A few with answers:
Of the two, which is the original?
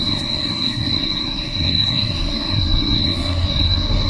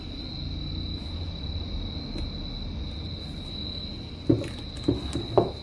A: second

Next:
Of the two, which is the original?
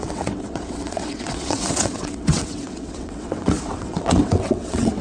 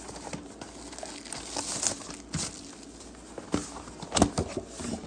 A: second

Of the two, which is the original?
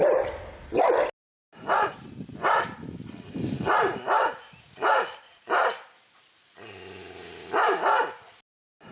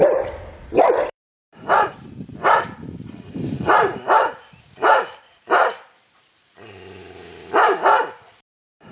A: first